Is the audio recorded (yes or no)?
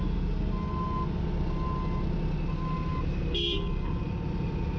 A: yes